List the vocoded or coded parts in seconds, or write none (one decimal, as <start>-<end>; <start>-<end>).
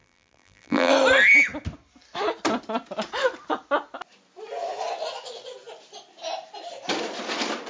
0.0-0.9